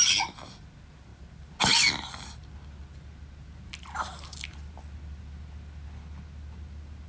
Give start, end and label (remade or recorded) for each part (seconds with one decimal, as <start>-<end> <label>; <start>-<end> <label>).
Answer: 0.0-7.1 recorded